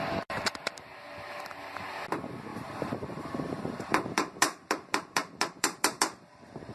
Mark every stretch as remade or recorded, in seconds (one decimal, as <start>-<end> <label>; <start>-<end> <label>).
0.0-2.5 recorded; 2.5-6.7 remade